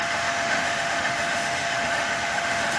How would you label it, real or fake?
fake